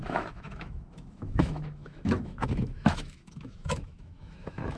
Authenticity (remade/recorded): remade